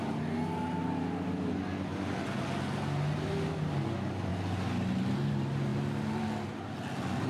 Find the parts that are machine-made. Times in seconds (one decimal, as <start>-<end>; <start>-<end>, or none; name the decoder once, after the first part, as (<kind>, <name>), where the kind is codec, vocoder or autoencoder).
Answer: none